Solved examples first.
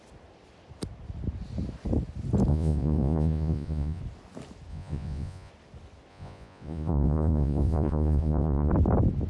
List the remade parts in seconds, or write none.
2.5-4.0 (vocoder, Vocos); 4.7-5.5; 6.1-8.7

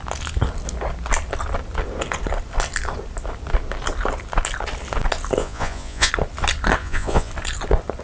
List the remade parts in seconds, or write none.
5.4-6.1 (vocoder, Vocos); 6.8-7.3

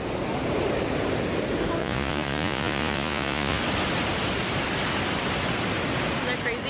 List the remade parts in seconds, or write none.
1.8-3.6 (vocoder, Vocos)

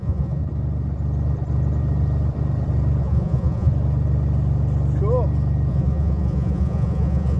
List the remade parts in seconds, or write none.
0.0-0.4 (vocoder, Vocos); 3.0-3.7; 5.7-7.4